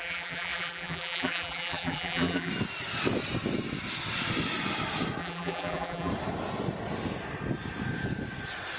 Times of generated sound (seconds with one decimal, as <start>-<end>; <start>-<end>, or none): 0.0-2.5; 5.2-6.1